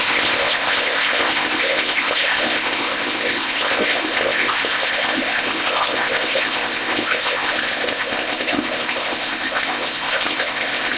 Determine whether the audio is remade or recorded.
remade